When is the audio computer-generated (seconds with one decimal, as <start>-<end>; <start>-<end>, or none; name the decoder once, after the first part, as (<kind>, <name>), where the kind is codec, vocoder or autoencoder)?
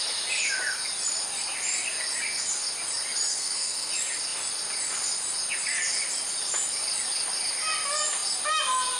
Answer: 3.3-3.9 (codec, SNAC)